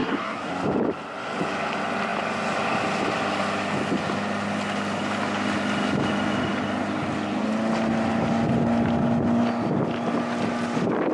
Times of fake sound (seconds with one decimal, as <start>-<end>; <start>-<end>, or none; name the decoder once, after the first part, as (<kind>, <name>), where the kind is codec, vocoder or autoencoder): 0.0-0.5 (codec, SNAC)